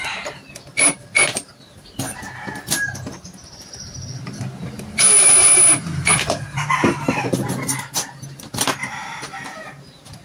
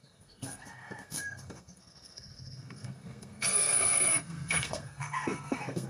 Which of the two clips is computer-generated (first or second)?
second